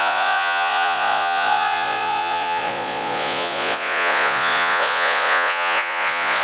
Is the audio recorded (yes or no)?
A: no